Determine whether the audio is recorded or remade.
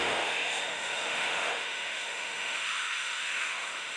remade